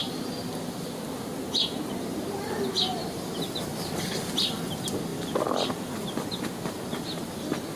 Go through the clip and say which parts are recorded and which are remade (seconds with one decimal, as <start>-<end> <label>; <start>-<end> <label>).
0.0-7.8 recorded